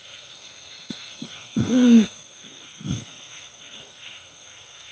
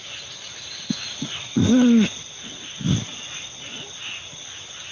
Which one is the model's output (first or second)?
first